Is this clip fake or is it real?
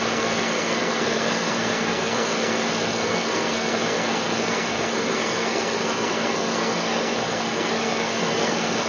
fake